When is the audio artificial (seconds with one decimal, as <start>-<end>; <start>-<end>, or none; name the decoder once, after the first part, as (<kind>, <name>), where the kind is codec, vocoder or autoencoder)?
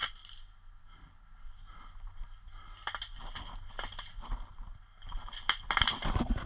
none